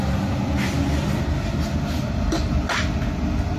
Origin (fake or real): real